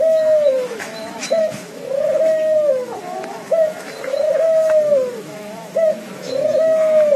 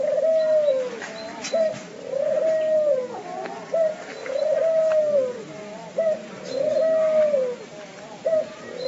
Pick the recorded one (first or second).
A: second